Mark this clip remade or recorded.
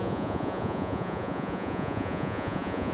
remade